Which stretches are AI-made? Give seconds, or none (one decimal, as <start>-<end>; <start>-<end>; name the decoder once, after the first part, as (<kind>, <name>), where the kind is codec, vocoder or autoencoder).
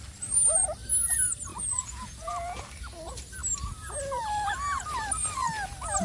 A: 1.5-2.3 (vocoder, Vocos)